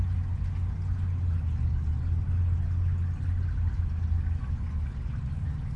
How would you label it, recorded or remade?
recorded